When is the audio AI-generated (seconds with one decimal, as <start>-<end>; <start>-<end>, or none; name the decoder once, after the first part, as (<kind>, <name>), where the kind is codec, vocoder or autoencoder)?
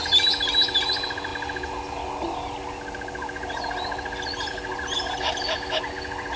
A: none